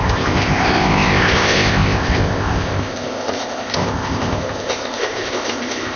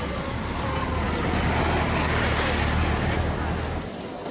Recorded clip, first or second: second